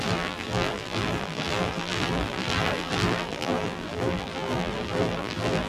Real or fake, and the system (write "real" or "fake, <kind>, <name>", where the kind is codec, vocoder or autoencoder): fake, vocoder, BigVGAN v2